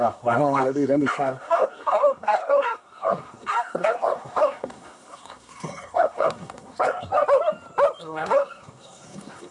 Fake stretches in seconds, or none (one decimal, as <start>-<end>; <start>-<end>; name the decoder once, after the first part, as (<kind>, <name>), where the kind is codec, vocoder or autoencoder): 0.0-7.1 (codec, SNAC); 8.0-9.5